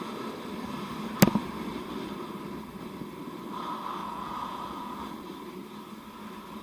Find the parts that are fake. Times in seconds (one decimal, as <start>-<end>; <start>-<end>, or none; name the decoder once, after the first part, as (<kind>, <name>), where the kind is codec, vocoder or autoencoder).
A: 4.0-5.1 (vocoder, Vocos)